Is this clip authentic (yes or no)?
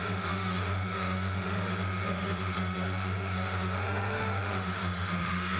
no